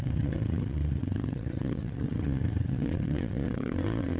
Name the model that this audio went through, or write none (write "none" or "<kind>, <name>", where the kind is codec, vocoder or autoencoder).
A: vocoder, WaveNeXt